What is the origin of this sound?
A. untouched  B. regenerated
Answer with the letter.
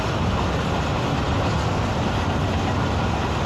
A